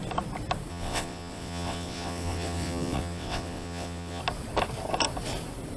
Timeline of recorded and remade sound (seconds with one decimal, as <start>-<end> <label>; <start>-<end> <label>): 0.0-0.7 recorded; 0.7-4.2 remade; 4.2-5.8 recorded